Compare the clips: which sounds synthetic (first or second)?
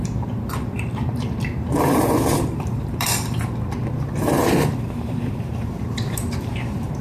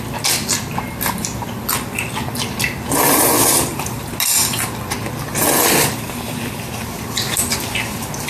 first